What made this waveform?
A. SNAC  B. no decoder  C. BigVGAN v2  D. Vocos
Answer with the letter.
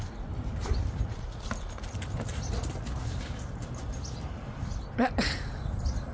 B